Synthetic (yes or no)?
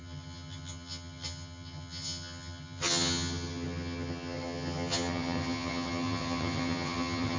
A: yes